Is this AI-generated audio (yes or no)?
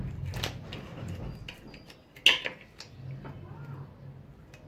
no